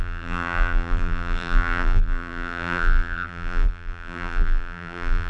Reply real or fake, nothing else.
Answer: fake